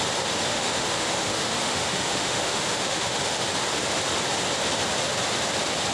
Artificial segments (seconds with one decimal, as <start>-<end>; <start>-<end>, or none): 0.5-3.4